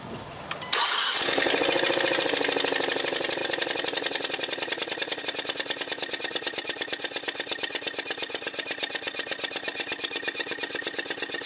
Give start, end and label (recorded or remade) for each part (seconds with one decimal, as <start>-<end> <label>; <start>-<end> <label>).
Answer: 0.0-11.5 recorded